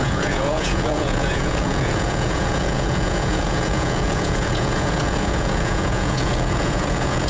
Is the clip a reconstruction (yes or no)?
yes